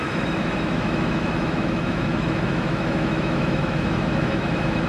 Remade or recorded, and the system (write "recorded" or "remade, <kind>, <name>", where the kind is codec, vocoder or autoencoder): remade, autoencoder, DAC-VAE